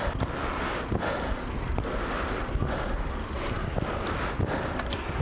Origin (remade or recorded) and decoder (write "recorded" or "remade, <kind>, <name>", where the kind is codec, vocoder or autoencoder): recorded